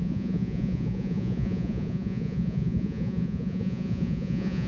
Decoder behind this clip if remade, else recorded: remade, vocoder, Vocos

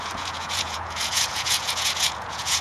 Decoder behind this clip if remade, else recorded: remade, vocoder, Vocos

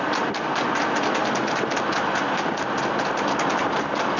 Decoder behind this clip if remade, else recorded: recorded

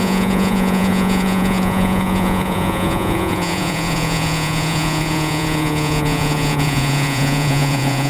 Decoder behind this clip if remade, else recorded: remade, vocoder, Vocos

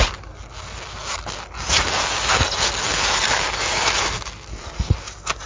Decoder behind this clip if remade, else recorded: recorded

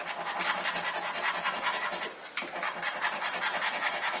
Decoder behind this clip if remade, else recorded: recorded